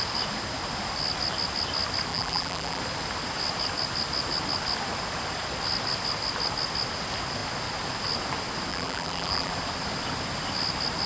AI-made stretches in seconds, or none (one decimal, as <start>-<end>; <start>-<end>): 2.1-2.8; 8.7-9.5